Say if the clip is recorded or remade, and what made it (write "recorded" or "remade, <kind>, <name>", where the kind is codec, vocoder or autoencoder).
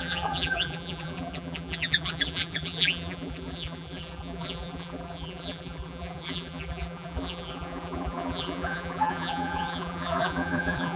remade, vocoder, BigVGAN v2